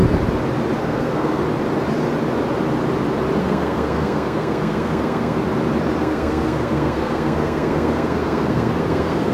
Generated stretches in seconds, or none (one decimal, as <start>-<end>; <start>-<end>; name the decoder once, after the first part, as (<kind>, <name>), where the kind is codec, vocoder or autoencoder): 0.8-1.4 (codec, SNAC); 3.4-5.4; 6.0-9.3

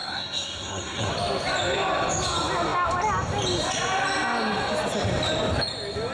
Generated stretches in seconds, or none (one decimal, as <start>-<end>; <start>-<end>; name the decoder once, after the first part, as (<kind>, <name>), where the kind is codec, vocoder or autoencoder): 0.0-1.1 (codec, SNAC)

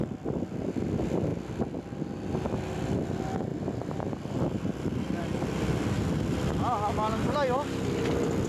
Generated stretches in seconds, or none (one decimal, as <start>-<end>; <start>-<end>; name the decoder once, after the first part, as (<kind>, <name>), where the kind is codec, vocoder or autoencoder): none

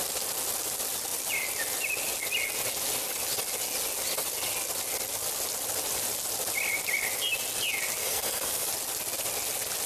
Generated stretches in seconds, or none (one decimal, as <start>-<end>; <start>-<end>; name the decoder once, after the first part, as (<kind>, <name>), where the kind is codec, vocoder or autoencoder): 8.0-8.7 (codec, SNAC)

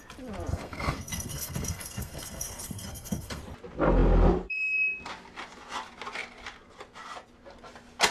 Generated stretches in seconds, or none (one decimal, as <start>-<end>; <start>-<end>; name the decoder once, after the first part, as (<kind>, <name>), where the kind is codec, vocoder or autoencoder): 0.5-3.4 (codec, SNAC)